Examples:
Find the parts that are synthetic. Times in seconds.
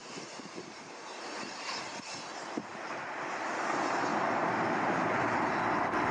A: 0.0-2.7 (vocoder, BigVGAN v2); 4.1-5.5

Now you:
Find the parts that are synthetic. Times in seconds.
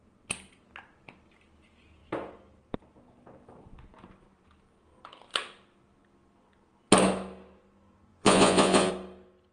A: 8.1-8.9 (vocoder, Vocos)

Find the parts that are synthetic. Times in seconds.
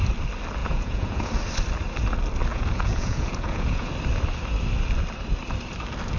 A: 0.6-1.3 (vocoder, Vocos); 2.5-3.9